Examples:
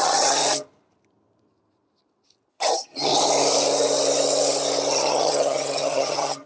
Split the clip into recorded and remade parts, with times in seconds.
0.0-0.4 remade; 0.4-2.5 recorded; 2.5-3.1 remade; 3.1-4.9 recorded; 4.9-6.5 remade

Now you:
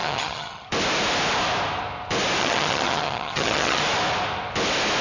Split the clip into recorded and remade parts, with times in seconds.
0.0-0.7 remade; 0.7-2.4 recorded; 2.4-3.8 remade; 3.8-5.0 recorded